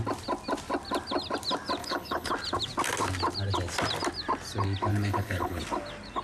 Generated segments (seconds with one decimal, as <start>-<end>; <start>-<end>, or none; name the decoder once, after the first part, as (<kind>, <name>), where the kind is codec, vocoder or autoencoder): 1.8-2.3 (codec, HILCodec); 4.9-5.6